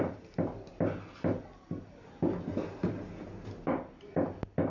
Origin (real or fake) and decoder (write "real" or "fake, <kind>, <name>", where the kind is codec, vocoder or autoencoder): real